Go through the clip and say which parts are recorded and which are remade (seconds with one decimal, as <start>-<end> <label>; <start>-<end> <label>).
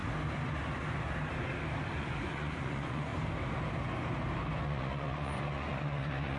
0.0-2.0 recorded; 2.0-3.1 remade; 3.1-4.6 recorded; 4.6-6.4 remade